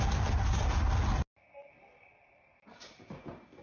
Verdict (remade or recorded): recorded